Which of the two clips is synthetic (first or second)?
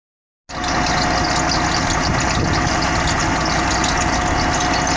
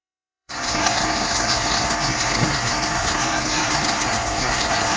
second